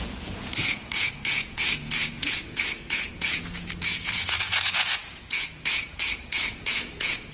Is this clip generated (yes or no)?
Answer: yes